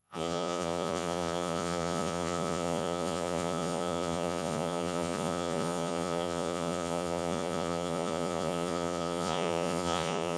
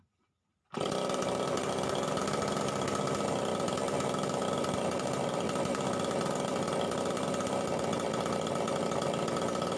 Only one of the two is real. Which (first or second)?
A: second